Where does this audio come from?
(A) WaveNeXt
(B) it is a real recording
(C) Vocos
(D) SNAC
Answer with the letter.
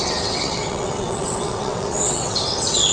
A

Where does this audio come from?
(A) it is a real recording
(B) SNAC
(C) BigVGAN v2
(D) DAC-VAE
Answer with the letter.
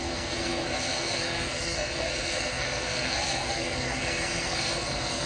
B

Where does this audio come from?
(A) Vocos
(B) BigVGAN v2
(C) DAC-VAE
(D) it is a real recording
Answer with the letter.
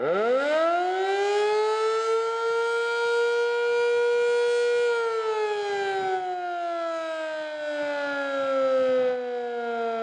D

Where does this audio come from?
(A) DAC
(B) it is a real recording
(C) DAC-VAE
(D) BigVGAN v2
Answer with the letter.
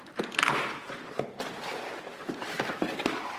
D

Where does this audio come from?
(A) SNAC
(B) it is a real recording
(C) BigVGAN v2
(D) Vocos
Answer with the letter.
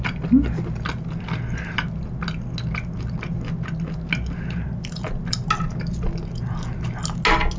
B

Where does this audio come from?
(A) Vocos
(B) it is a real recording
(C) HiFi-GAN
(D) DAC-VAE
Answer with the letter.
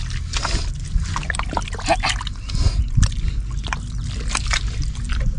B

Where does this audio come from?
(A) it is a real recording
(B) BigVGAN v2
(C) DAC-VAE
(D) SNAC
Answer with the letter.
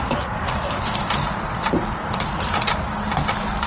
B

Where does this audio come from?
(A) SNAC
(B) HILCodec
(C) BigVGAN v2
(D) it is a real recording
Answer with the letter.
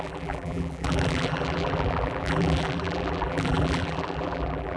C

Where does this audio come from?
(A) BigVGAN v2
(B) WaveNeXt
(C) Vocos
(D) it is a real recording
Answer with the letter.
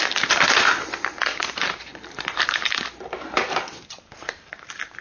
A